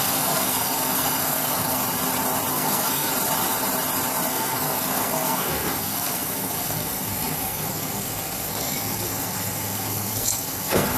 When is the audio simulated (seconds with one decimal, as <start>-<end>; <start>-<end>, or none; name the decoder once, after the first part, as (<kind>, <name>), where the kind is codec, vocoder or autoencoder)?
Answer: 0.0-1.8 (codec, SNAC); 2.5-3.1; 4.3-11.0